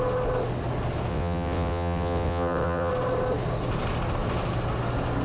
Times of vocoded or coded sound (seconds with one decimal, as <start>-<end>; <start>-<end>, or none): 1.1-2.9

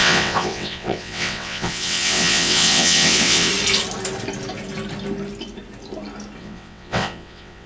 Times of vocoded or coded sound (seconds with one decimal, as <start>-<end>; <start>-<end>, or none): 0.0-3.5; 6.4-7.7

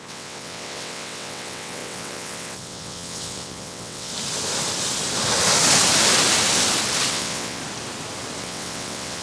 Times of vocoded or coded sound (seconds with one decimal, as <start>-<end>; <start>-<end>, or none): 0.0-4.1; 7.1-7.6; 8.4-9.2

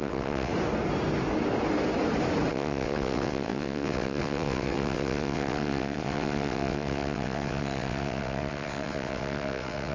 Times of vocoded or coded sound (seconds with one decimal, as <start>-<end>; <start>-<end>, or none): 0.0-0.5; 2.5-9.9

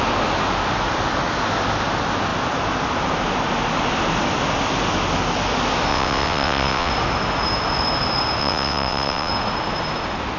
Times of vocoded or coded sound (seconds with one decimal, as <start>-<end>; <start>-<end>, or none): 5.9-6.9; 8.4-9.3